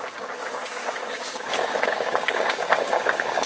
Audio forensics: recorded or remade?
remade